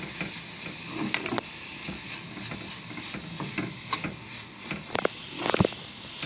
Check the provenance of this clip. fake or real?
real